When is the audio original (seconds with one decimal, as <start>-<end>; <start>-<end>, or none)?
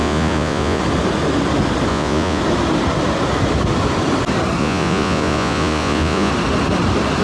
0.8-1.9; 2.4-4.6; 6.3-7.2